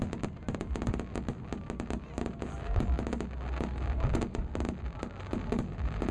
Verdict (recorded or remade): recorded